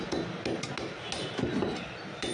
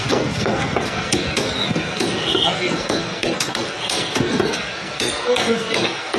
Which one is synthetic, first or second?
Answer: second